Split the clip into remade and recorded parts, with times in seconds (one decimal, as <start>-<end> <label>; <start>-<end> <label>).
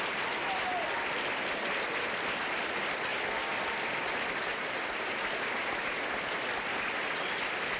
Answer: 0.0-4.6 recorded; 4.6-5.2 remade; 5.2-7.8 recorded